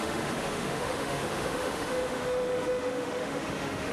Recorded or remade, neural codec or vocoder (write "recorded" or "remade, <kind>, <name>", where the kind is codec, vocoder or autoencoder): remade, autoencoder, DAC-VAE